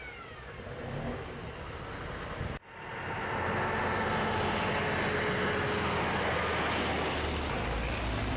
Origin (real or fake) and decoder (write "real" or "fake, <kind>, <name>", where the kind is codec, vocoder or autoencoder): real